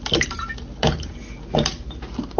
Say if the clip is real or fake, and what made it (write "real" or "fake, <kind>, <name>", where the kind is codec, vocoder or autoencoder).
real